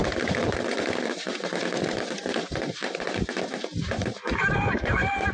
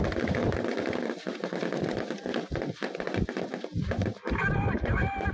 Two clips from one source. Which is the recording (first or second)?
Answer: second